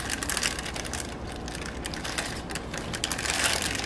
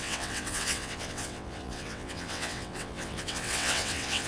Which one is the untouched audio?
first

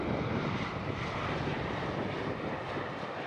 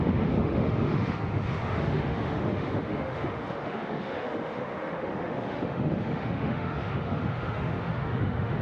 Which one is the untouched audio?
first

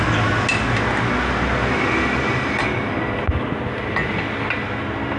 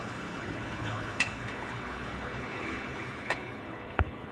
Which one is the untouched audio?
first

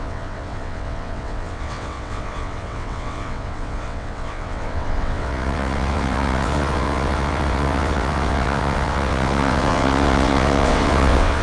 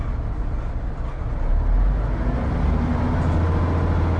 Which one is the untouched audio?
second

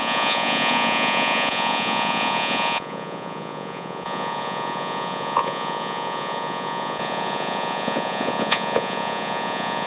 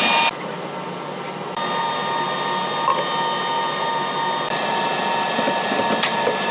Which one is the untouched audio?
second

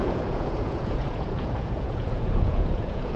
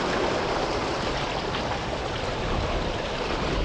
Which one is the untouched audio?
second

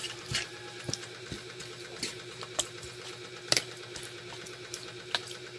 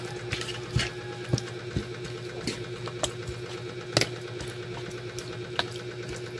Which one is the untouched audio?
second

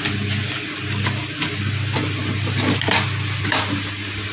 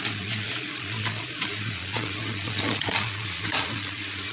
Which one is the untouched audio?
first